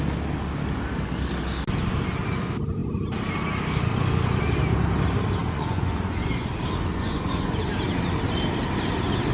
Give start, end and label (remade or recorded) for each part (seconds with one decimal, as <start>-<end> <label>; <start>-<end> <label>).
0.0-5.4 recorded; 5.4-6.5 remade; 6.5-6.9 recorded; 6.9-7.6 remade; 7.6-9.3 recorded